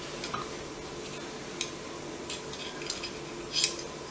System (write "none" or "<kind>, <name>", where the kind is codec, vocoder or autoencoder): none